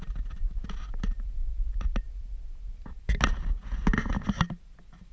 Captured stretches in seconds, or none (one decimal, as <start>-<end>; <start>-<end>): 0.0-5.1